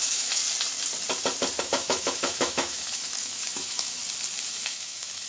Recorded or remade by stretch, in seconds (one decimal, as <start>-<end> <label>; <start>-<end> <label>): 0.0-0.4 remade; 0.4-1.6 recorded; 1.6-4.0 remade; 4.0-4.5 recorded; 4.5-5.3 remade

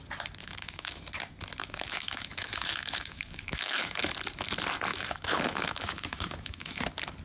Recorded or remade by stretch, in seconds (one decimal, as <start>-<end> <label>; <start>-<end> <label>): 0.0-0.4 recorded; 0.4-1.0 remade; 1.0-1.6 recorded; 1.6-4.1 remade; 4.1-4.9 recorded; 4.9-6.8 remade; 6.8-7.2 recorded